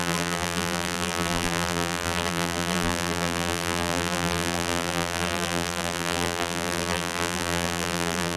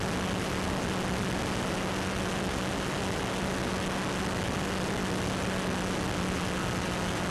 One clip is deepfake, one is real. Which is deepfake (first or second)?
first